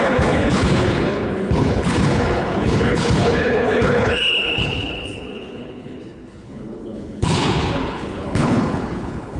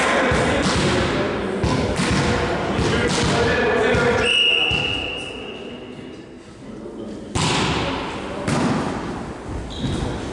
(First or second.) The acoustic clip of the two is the second